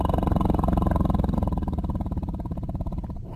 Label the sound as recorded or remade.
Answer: remade